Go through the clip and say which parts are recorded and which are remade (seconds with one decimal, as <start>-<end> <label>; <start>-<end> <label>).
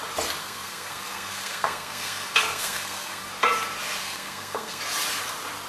0.0-0.4 recorded; 0.4-3.3 remade; 3.3-4.0 recorded; 4.0-4.8 remade; 4.8-5.7 recorded